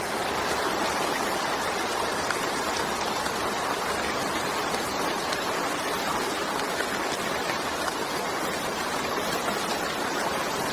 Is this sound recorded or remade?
recorded